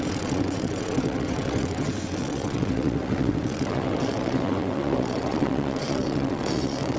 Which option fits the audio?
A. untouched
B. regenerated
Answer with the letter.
B